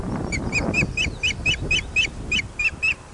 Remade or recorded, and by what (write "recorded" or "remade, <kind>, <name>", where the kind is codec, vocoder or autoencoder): recorded